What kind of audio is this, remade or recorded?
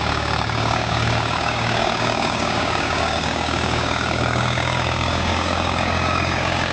remade